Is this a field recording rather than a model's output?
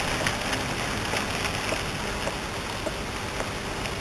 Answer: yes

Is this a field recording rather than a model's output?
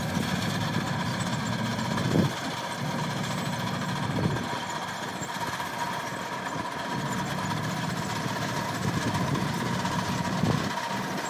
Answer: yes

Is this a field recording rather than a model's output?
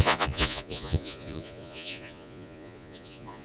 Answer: no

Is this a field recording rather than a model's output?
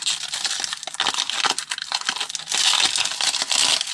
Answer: yes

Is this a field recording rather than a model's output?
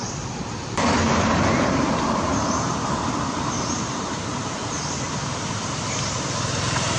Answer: no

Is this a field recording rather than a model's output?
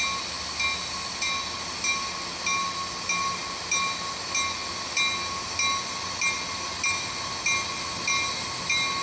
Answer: yes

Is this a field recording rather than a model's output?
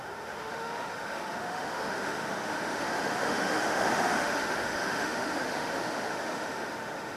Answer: no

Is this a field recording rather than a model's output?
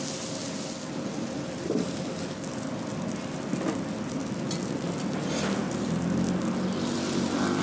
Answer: yes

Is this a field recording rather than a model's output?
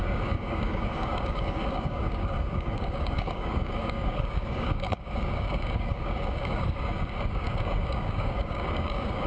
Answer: no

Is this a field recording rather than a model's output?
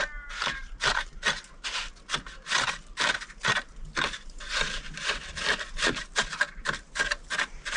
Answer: yes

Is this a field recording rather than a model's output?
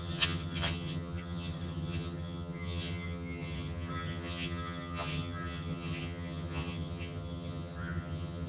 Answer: no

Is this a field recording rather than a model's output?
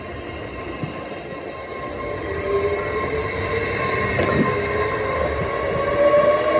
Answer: yes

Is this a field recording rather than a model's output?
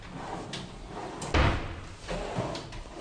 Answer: yes